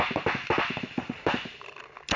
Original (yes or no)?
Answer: yes